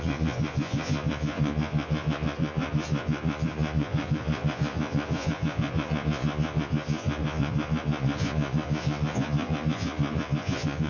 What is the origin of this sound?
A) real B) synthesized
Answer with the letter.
B